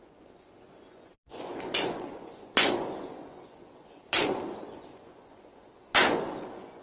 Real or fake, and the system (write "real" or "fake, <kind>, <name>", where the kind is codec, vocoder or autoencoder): fake, vocoder, Vocos